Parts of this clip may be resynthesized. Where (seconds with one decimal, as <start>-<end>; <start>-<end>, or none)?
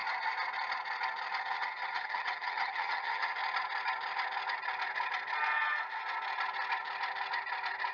1.4-3.4